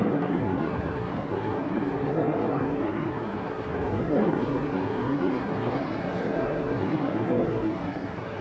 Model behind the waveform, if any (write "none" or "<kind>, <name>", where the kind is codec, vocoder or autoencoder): codec, SNAC